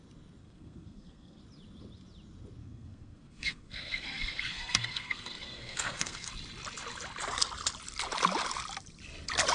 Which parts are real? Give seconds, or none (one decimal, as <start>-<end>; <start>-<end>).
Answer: 0.0-0.4; 1.4-2.6; 6.3-9.5

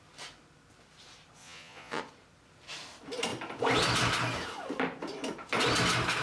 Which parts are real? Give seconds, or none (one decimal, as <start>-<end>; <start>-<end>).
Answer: 0.0-1.4; 2.0-6.2

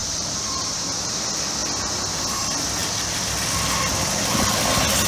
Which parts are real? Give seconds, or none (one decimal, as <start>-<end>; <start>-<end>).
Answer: 1.1-5.1